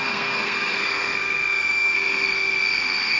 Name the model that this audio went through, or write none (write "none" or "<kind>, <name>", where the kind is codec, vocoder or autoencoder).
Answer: codec, SNAC